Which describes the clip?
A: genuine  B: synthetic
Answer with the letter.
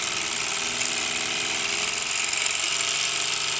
A